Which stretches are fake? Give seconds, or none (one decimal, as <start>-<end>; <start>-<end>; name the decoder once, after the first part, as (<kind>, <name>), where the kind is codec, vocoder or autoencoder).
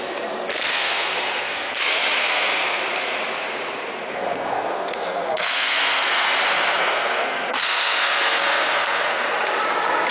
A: 0.5-1.8 (codec, SNAC); 2.2-2.8; 4.1-6.3; 6.8-9.2